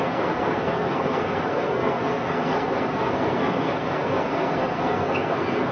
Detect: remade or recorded remade